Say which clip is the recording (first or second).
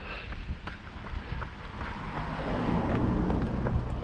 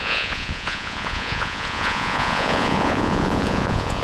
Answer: first